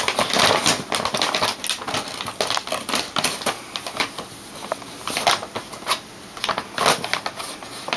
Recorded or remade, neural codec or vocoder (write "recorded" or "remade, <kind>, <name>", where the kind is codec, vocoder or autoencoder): recorded